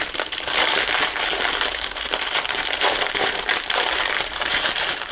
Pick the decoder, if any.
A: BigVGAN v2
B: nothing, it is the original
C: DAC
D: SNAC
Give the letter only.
A